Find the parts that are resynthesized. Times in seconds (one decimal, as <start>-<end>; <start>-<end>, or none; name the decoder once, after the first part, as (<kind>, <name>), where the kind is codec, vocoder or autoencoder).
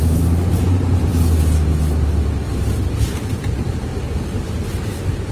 0.0-1.1 (vocoder, BigVGAN v2); 2.6-3.9; 4.8-5.3